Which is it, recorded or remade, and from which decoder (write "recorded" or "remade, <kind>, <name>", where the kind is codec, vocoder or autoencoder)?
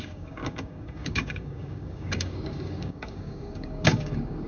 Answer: remade, codec, DAC